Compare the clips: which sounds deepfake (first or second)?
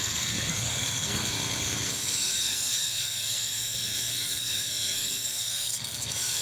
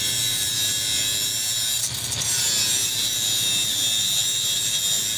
first